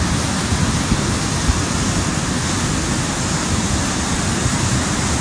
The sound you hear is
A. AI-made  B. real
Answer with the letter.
A